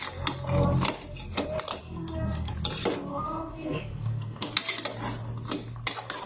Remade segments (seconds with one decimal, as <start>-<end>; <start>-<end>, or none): 1.8-2.5; 3.1-4.5